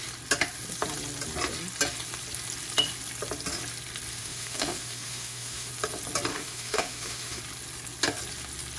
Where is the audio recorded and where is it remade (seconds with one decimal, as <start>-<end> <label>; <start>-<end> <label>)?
0.0-4.2 recorded; 4.2-5.7 remade; 5.7-6.3 recorded; 6.3-7.4 remade; 7.4-8.8 recorded